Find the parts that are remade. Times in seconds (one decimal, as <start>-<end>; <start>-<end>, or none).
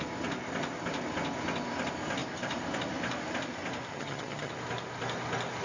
3.9-4.5